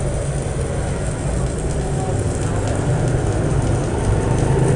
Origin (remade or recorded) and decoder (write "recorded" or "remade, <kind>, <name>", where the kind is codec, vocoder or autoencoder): recorded